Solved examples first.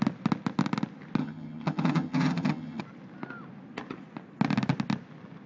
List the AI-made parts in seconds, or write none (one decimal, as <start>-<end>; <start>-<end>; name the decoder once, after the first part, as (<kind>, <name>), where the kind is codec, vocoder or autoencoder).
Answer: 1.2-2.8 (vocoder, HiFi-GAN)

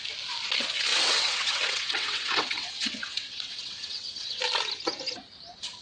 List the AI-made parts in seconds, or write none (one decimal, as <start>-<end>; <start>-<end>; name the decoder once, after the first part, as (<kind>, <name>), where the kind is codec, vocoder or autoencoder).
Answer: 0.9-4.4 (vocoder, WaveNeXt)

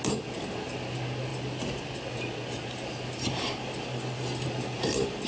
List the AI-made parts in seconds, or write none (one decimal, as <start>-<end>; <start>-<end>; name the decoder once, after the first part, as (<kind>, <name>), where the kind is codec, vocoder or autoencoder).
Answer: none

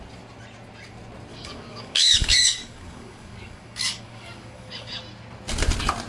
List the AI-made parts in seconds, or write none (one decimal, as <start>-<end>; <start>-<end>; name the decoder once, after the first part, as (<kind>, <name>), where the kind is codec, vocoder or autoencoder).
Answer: 1.3-5.0 (codec, DAC)

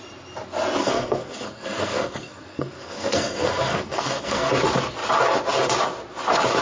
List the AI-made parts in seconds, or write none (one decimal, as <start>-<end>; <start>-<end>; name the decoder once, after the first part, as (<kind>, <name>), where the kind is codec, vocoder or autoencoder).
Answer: 0.8-4.5 (codec, SNAC)

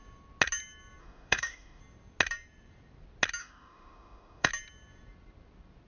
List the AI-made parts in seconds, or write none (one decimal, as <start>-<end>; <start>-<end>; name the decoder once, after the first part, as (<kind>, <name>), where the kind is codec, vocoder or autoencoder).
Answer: 1.0-1.8 (autoencoder, DAC-VAE); 3.4-4.5

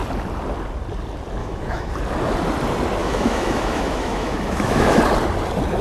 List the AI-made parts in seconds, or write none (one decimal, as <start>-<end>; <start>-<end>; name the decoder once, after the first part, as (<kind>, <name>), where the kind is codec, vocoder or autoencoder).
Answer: 1.4-1.9 (autoencoder, DAC-VAE); 3.0-5.0